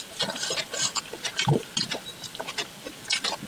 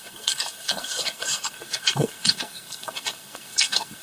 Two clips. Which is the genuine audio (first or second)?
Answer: first